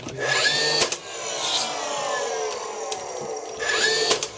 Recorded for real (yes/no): yes